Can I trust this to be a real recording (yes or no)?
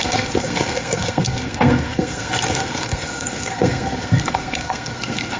no